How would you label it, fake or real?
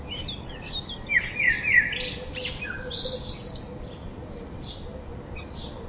real